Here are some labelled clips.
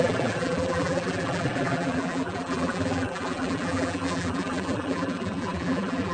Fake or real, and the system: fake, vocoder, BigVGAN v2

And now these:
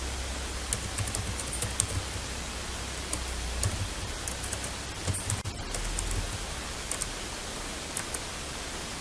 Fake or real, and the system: real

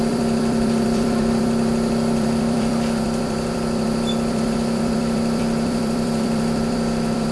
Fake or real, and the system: fake, vocoder, BigVGAN v2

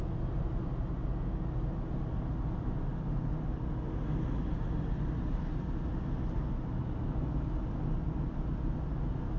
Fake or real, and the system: real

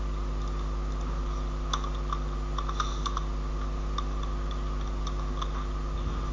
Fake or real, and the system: real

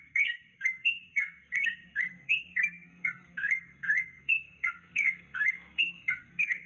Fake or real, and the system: fake, codec, SNAC